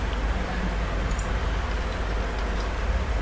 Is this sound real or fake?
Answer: real